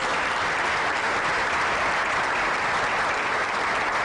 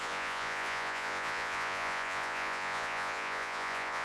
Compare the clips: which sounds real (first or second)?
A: first